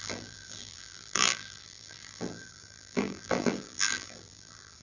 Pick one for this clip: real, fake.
fake